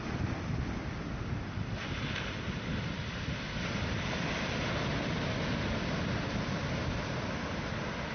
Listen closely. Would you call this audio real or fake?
real